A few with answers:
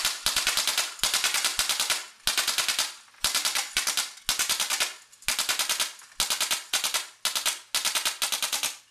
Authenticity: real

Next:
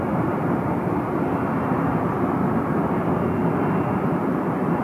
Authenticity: real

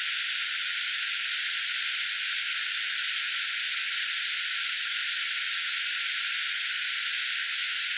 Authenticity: real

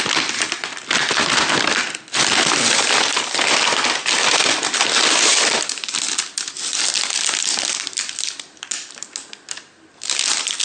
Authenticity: real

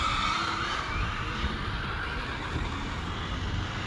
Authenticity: real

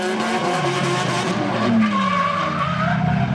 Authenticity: real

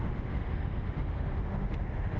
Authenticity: fake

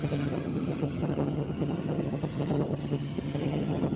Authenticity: fake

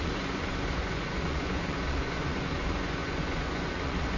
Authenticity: fake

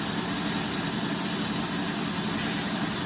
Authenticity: real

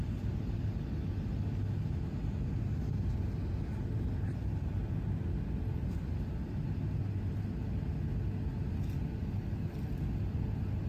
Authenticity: real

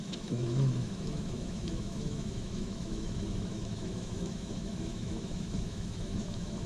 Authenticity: fake